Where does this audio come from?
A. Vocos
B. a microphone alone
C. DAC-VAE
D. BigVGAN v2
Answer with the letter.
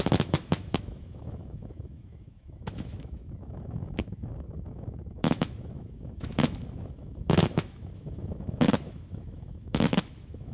C